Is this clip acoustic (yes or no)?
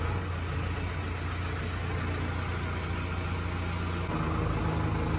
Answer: yes